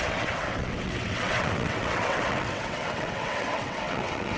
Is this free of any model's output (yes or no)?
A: no